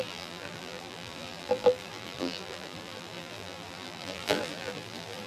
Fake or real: fake